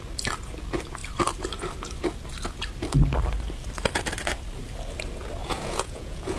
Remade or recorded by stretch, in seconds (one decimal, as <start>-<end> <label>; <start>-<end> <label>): 0.0-5.4 recorded; 5.4-6.4 remade